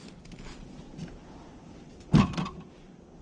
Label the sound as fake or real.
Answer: real